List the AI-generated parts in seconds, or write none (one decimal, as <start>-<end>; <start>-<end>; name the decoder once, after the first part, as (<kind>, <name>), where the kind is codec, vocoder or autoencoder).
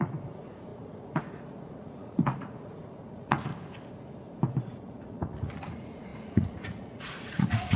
0.0-3.5 (vocoder, Vocos); 4.6-7.8